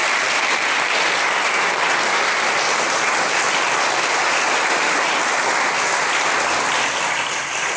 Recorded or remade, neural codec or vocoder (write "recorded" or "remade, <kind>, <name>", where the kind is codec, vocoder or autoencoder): recorded